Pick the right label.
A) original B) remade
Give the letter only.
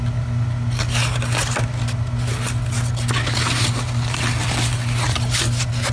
A